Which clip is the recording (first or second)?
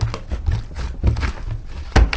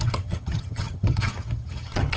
first